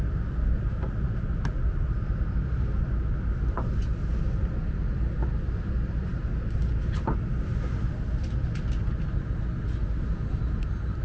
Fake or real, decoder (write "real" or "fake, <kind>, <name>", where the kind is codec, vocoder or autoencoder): real